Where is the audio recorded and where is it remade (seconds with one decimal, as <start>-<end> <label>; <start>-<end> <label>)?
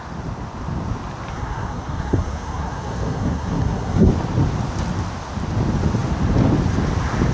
0.0-1.3 recorded; 1.3-4.1 remade; 4.1-7.3 recorded